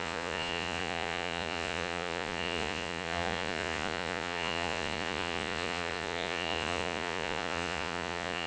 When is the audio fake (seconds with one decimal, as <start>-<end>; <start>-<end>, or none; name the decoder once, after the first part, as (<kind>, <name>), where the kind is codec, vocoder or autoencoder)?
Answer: 0.0-8.5 (vocoder, Vocos)